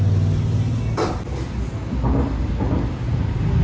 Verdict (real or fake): real